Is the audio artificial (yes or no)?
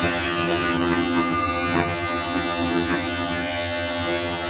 yes